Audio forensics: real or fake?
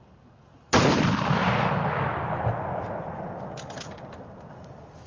real